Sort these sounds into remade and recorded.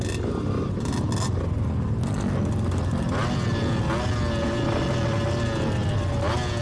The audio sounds recorded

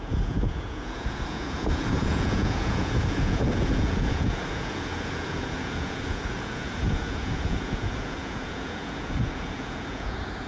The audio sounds remade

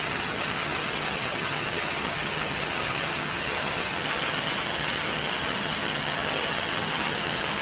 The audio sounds remade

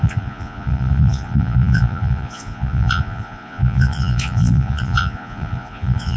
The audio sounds remade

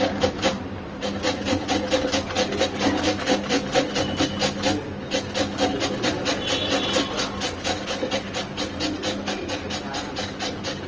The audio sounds recorded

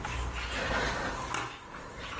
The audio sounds recorded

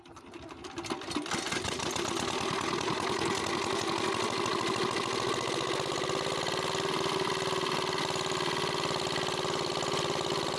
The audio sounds recorded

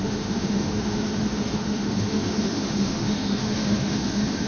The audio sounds remade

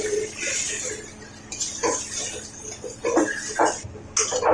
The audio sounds recorded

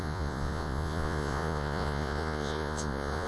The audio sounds remade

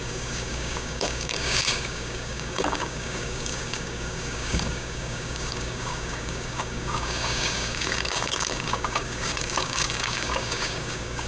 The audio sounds remade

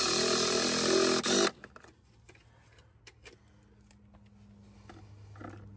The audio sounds recorded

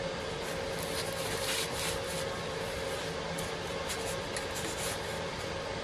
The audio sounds remade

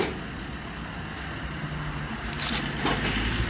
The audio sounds recorded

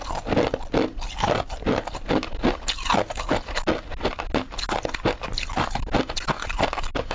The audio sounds recorded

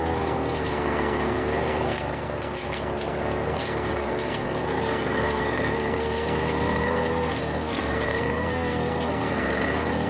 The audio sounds remade